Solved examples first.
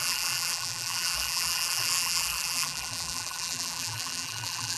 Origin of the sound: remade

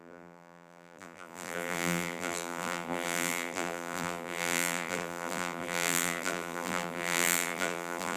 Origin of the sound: remade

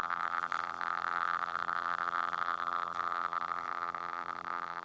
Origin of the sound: remade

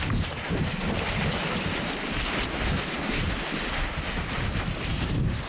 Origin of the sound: recorded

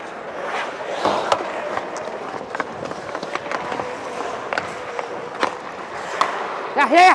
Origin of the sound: recorded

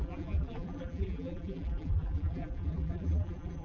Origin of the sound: remade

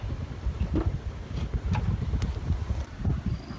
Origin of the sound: recorded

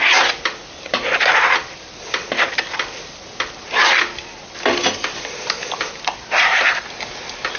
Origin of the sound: recorded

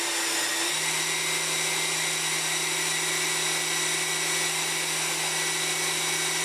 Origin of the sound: recorded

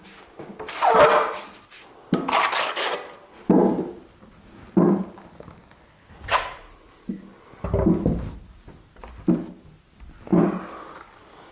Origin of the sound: recorded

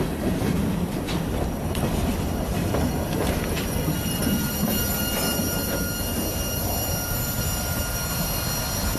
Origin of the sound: recorded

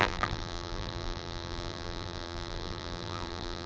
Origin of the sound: remade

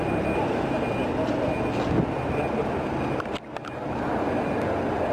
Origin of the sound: recorded